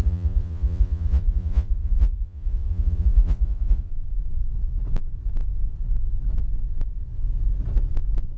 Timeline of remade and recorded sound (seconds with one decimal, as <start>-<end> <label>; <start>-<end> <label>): 0.0-3.9 remade; 3.9-8.4 recorded